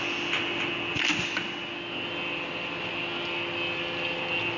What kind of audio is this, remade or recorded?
recorded